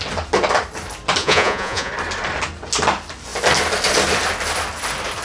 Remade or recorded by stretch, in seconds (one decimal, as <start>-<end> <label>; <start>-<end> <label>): 0.0-1.2 recorded; 1.2-1.9 remade; 1.9-5.2 recorded